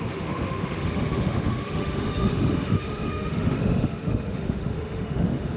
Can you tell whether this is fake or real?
fake